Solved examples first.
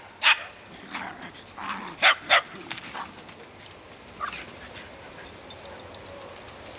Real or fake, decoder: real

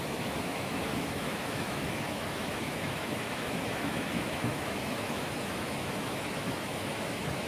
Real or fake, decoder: fake, autoencoder, DAC-VAE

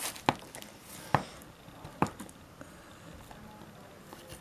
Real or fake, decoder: real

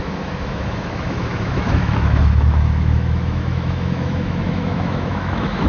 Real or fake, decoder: fake, autoencoder, DAC-VAE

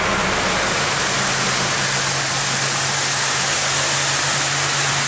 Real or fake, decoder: real